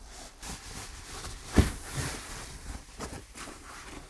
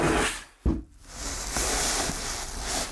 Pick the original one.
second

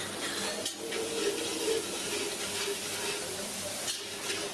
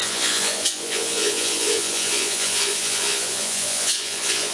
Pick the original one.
first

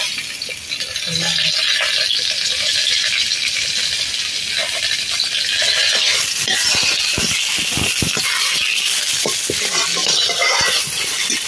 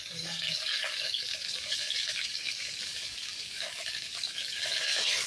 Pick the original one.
first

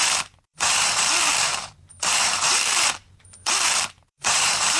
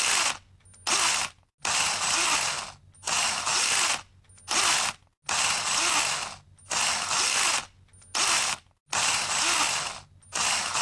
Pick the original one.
second